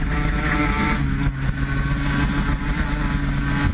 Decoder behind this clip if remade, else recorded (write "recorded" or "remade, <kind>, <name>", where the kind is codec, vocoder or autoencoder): recorded